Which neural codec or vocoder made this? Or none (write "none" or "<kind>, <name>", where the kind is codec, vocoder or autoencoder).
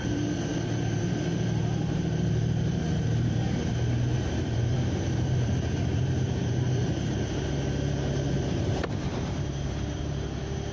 vocoder, BigVGAN v2